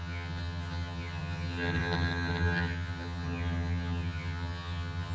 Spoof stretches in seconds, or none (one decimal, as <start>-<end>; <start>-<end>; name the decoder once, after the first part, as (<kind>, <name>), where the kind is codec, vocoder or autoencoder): 0.0-5.1 (vocoder, HiFi-GAN)